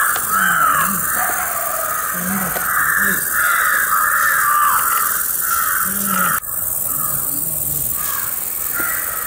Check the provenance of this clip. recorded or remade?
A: recorded